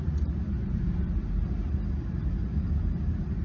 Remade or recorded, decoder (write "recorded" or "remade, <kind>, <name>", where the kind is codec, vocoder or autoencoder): recorded